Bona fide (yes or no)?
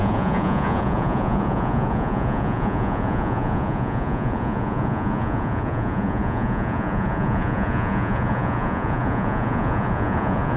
no